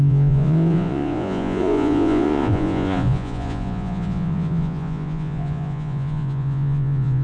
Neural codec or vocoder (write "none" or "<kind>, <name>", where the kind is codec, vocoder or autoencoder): vocoder, Vocos